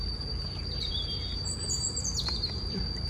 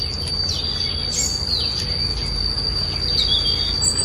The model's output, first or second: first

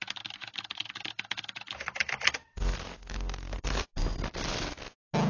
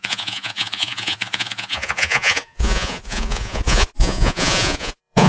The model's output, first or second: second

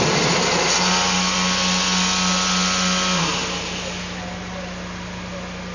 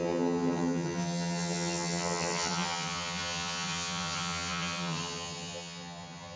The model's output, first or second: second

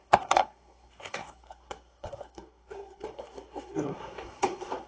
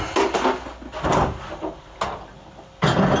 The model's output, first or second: first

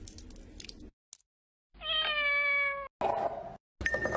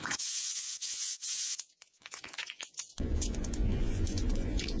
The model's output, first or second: second